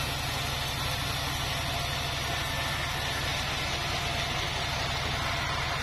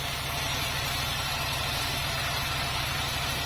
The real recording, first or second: first